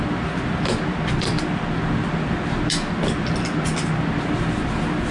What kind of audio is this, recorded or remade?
recorded